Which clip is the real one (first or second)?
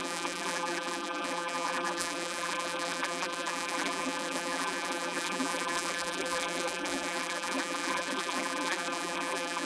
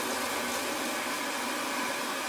second